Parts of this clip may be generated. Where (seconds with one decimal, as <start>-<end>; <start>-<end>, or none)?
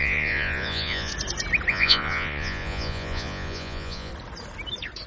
0.0-1.1; 1.7-4.1